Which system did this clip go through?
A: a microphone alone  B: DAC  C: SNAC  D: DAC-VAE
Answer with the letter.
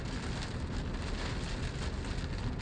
A